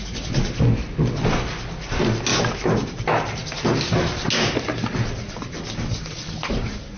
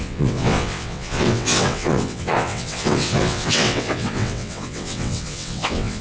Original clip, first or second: first